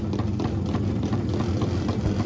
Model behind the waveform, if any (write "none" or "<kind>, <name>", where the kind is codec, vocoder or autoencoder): none